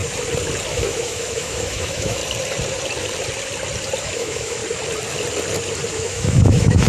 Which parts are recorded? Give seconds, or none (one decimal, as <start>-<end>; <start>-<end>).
0.0-0.7; 2.2-4.0; 4.6-5.9